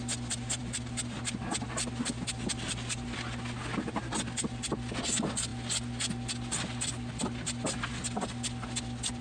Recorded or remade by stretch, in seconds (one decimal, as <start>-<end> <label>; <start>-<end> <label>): 0.0-9.2 recorded